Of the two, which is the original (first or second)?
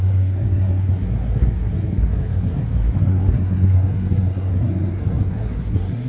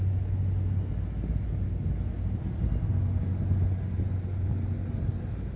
second